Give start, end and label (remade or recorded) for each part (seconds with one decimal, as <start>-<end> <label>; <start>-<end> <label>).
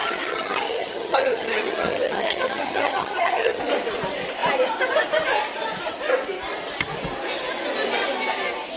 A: 0.0-3.6 remade; 3.6-8.8 recorded